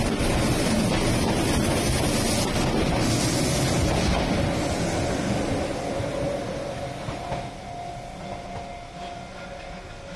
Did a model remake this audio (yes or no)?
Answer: no